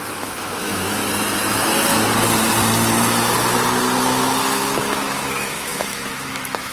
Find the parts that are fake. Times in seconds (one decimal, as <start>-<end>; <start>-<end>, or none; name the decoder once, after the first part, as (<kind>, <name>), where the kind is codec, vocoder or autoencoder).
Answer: 0.0-1.0 (autoencoder, DAC-VAE); 4.4-6.7